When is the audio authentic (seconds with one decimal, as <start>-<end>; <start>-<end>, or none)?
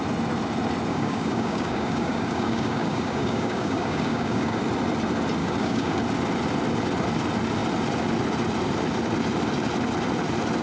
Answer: 0.0-0.9; 4.6-5.4; 6.0-10.6